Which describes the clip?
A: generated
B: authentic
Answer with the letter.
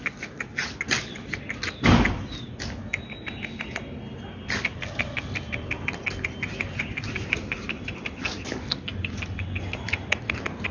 B